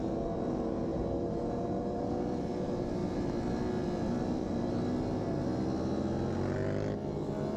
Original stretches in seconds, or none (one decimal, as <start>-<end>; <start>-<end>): 0.0-0.9; 2.0-7.6